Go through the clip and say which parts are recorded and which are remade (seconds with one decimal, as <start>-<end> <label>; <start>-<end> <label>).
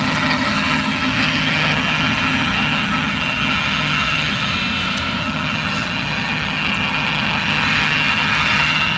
0.0-4.5 remade; 4.5-5.2 recorded; 5.2-9.0 remade